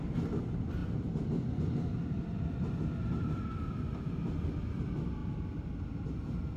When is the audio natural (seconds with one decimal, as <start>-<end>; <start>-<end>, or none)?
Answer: 0.0-6.6